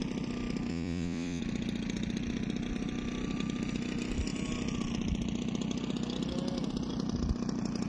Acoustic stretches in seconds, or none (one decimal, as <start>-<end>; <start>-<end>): 0.0-0.7; 1.4-7.9